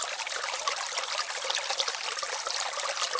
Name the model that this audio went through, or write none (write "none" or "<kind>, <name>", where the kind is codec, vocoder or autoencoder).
none